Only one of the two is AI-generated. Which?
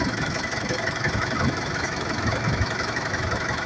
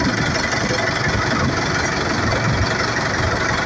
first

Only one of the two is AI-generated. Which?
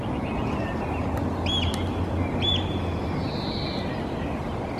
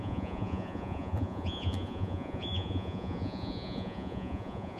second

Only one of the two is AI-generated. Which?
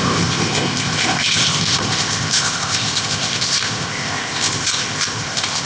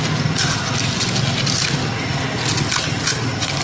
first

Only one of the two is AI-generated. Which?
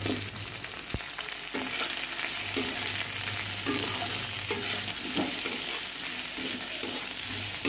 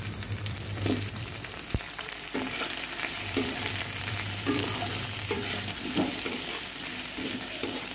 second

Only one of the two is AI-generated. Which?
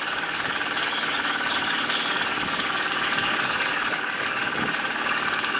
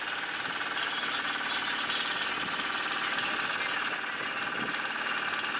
first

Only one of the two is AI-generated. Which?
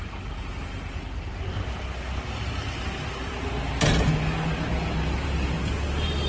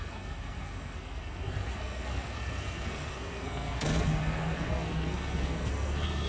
second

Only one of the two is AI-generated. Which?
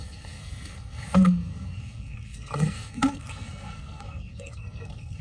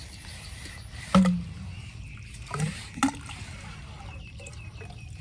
first